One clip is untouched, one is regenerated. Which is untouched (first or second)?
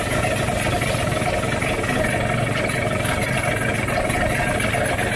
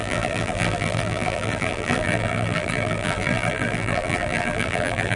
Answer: first